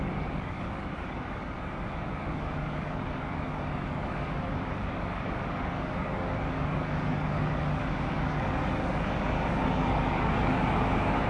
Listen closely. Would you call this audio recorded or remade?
remade